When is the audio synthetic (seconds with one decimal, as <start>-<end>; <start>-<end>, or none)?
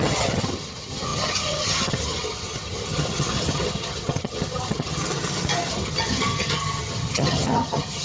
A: 0.0-5.0; 5.7-8.0